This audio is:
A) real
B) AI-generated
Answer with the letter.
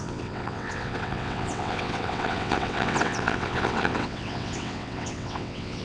B